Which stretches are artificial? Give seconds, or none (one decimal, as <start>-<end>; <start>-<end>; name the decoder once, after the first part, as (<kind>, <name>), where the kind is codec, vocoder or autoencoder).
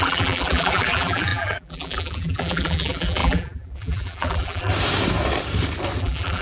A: 0.0-4.7 (vocoder, BigVGAN v2); 6.0-6.4